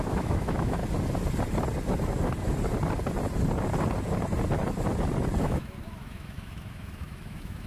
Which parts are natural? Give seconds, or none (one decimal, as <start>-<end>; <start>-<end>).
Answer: 0.8-5.4